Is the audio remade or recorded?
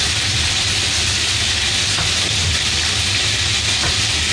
recorded